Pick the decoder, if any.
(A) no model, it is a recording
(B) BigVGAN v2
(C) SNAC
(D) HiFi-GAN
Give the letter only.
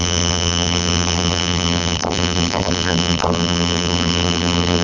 B